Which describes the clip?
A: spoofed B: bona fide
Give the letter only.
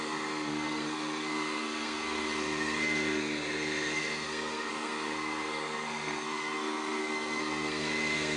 A